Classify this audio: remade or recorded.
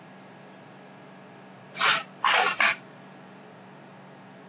recorded